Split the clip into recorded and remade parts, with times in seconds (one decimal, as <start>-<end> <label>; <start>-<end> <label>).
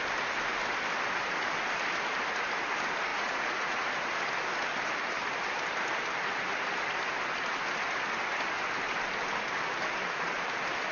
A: 0.0-3.1 recorded; 3.1-3.9 remade; 3.9-10.9 recorded